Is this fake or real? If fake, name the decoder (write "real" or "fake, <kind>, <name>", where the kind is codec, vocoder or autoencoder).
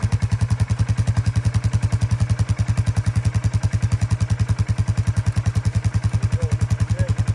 real